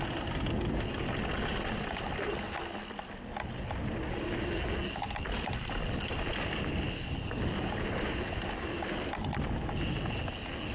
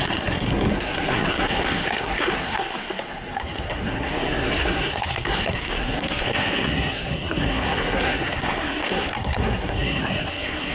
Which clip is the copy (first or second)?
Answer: second